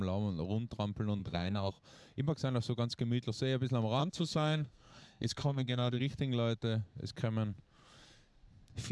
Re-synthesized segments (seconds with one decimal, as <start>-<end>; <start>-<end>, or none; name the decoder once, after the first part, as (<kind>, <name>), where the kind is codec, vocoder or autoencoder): 1.2-1.7 (codec, SNAC); 4.0-6.0